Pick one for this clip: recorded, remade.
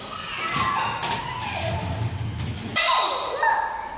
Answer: recorded